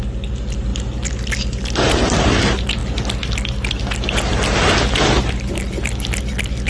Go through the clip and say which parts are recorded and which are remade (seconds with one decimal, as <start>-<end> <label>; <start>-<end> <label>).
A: 0.0-6.7 recorded